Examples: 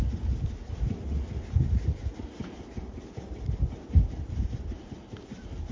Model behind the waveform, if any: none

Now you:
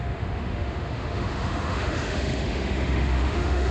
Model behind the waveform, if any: autoencoder, DAC-VAE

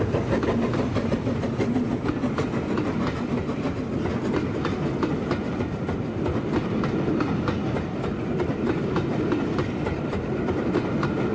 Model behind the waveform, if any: none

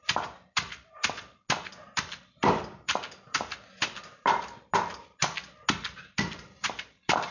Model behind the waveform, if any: none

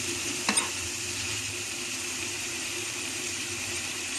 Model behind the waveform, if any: vocoder, BigVGAN v2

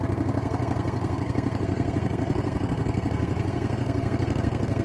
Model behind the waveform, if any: codec, SNAC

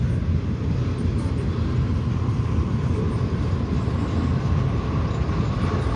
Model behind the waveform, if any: none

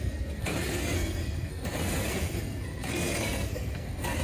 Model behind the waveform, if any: codec, SNAC